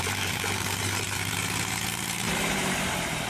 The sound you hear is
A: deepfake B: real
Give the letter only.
A